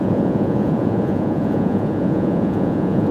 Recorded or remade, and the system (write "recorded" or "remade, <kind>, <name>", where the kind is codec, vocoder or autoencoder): remade, vocoder, Vocos